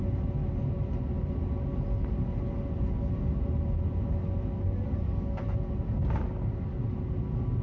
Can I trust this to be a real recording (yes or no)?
yes